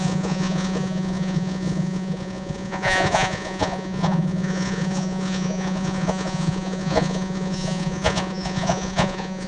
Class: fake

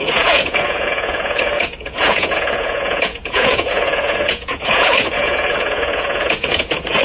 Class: fake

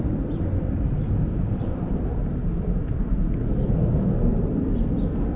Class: real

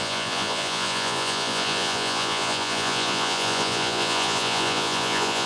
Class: fake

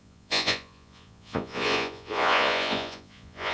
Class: fake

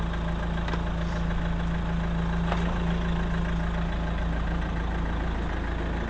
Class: real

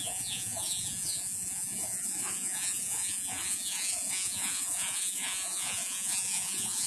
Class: fake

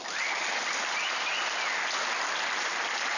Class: real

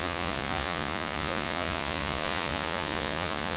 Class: fake